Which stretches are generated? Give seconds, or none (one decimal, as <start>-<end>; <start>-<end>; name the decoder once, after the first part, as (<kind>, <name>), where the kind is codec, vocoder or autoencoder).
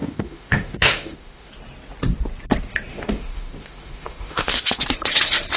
0.0-1.5 (autoencoder, DAC-VAE); 2.9-4.8